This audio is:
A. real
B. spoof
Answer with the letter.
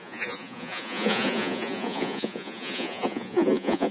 B